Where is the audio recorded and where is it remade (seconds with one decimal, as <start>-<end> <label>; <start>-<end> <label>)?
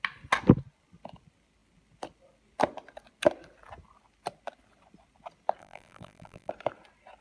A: 0.0-5.6 recorded; 5.6-6.5 remade; 6.5-7.2 recorded